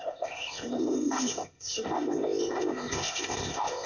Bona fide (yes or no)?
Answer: no